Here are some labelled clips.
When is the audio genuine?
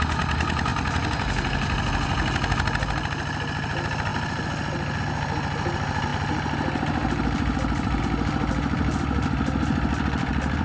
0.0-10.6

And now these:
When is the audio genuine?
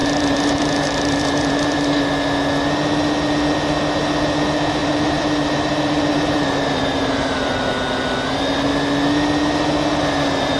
2.0-4.8; 7.7-10.6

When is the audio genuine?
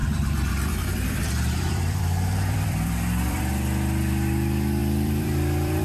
3.5-4.8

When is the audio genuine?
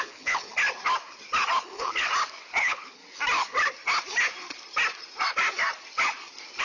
0.5-1.6; 2.1-2.6; 3.0-6.6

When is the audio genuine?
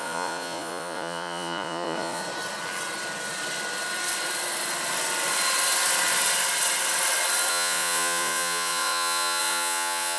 2.2-7.5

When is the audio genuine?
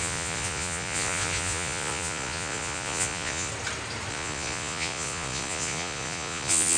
3.5-4.1